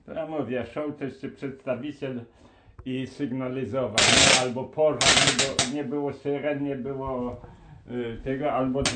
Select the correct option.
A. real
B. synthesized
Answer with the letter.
A